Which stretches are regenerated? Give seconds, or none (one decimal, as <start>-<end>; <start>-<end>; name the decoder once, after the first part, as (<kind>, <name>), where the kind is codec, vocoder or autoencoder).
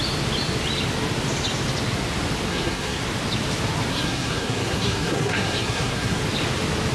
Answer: 2.5-3.0 (codec, SNAC); 3.9-6.2